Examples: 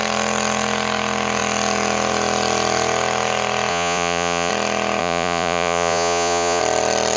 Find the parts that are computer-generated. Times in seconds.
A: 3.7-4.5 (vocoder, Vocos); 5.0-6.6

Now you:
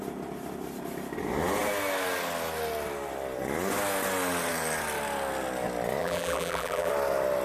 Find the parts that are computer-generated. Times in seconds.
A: 6.0-6.9 (vocoder, BigVGAN v2)

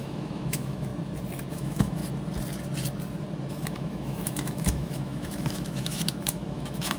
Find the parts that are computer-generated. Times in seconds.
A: 0.0-0.9 (autoencoder, DAC-VAE); 1.5-2.0; 3.5-7.0

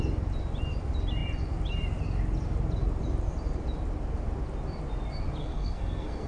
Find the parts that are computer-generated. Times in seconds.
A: 5.4-6.3 (codec, SNAC)

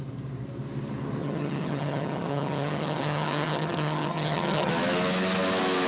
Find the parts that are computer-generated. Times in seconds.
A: 1.2-4.7 (vocoder, HiFi-GAN)

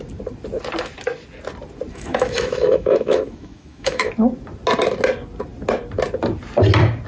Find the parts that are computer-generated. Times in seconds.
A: 1.9-4.1 (autoencoder, DAC-VAE)

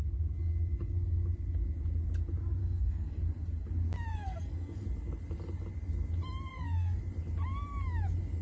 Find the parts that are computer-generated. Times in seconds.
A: 2.6-3.2 (codec, SNAC); 4.1-4.8; 6.5-7.0